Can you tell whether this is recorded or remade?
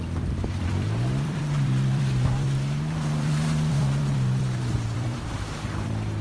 remade